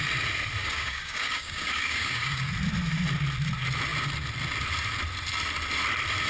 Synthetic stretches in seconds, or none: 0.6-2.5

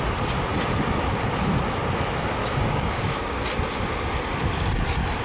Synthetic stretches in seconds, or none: 2.4-3.4

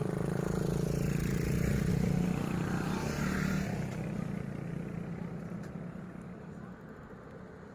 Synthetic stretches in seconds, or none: none

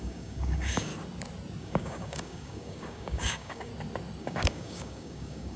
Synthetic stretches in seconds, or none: 0.0-0.9; 1.6-3.7; 4.2-5.6

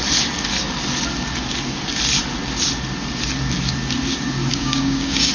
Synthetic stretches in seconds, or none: 4.5-5.3

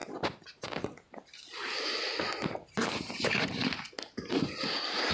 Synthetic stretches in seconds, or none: none

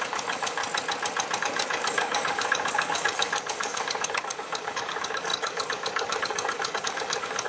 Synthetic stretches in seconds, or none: 0.0-0.6; 1.4-7.5